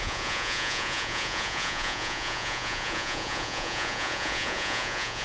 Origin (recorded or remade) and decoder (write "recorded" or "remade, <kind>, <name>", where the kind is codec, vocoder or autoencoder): remade, vocoder, Vocos